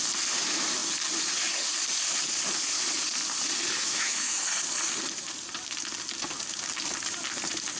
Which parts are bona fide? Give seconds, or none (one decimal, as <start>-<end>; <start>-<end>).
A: 0.0-3.8; 4.4-7.8